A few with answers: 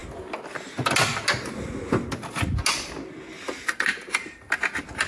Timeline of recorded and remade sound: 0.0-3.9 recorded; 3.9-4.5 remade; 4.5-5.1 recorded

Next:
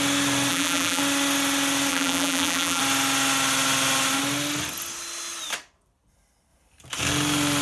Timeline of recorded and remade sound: 0.0-0.5 recorded; 0.5-1.0 remade; 1.0-1.9 recorded; 1.9-2.8 remade; 2.8-7.6 recorded